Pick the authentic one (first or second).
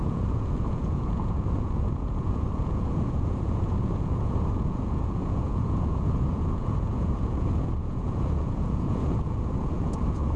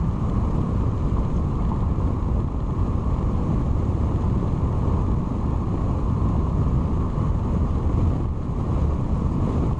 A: second